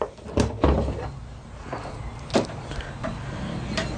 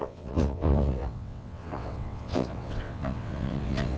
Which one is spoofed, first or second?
second